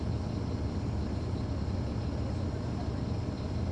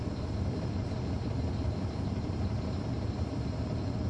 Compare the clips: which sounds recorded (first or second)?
first